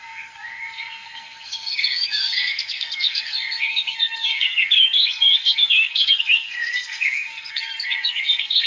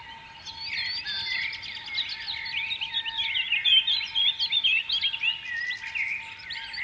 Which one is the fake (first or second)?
first